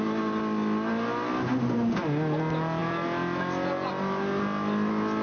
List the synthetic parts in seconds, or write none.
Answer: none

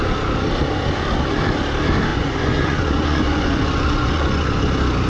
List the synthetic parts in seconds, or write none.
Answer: 2.1-4.6 (vocoder, Vocos)

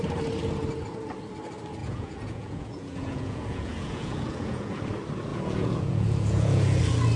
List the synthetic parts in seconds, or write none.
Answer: 1.8-4.8 (vocoder, Vocos); 5.3-6.8

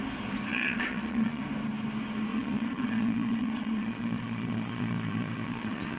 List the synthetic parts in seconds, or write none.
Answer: 0.5-1.4 (vocoder, Vocos); 2.3-6.0

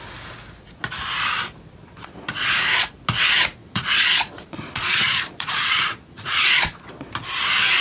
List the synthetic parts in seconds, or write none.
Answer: 1.8-2.5 (vocoder, Vocos); 3.6-7.1

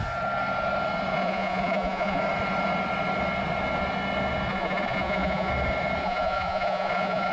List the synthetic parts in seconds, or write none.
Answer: 1.1-2.2 (vocoder, Vocos); 4.5-5.5; 6.0-7.3